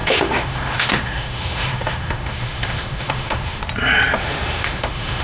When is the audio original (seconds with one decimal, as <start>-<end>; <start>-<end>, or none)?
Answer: 3.6-4.2